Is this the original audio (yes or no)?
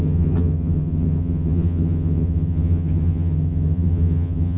no